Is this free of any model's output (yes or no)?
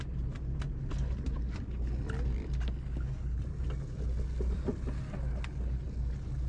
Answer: yes